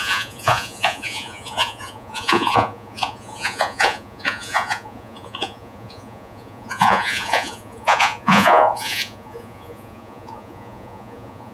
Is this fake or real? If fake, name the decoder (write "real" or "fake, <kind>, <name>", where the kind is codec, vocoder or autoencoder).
fake, vocoder, Vocos